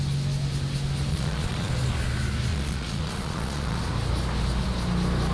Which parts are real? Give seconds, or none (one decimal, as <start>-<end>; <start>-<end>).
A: 0.0-1.1; 1.7-2.5; 3.8-5.3